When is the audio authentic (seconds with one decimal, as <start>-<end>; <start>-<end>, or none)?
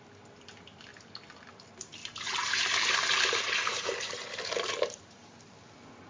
0.0-2.0; 5.3-6.1